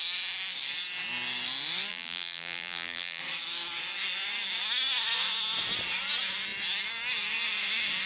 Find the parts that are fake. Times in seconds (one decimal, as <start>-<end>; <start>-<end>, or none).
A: 1.9-3.2